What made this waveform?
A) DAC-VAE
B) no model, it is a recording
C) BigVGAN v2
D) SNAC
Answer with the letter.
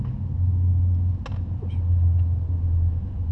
B